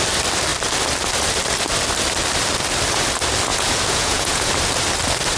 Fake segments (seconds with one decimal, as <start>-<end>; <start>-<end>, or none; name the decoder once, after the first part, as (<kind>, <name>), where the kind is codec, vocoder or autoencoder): 3.5-4.5 (vocoder, Vocos)